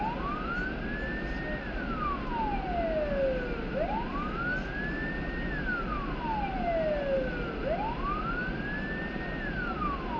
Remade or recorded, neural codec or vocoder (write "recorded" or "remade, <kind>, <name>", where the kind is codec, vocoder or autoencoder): recorded